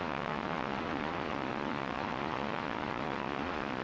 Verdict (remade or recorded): remade